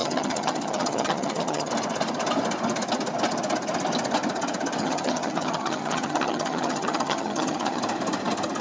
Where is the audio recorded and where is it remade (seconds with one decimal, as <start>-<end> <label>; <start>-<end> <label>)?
0.0-1.7 remade; 1.7-4.8 recorded; 4.8-7.8 remade; 7.8-8.6 recorded